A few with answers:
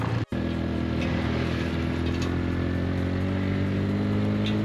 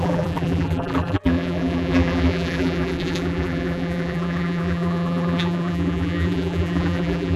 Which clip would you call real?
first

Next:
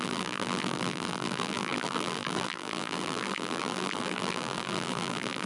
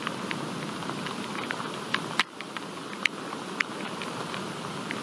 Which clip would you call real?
second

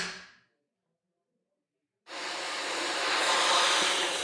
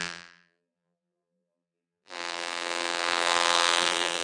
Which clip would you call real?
first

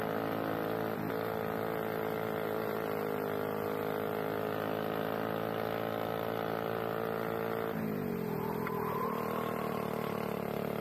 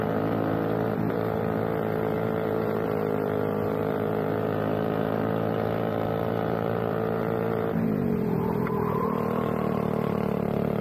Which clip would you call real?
first